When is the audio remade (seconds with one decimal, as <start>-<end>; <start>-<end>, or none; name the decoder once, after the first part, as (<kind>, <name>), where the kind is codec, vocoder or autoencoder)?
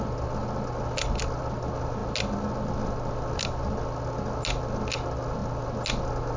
none